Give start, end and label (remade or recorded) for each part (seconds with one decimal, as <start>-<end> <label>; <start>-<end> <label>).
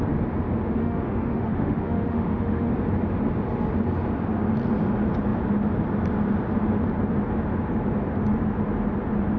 0.0-0.8 recorded; 0.8-2.7 remade; 2.7-9.4 recorded